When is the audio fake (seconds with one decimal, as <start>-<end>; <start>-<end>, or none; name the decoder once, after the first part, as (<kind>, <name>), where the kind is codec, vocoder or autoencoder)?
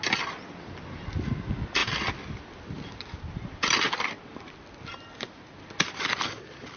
none